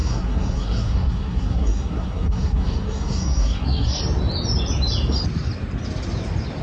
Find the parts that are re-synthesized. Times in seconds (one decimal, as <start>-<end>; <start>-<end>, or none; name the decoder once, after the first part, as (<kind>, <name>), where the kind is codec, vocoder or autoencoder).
0.0-4.0 (codec, SNAC)